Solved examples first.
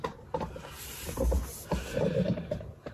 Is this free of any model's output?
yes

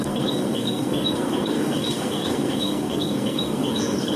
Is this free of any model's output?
no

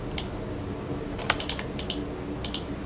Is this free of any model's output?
yes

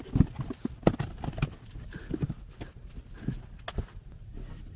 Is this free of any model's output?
yes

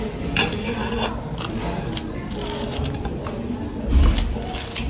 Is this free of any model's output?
yes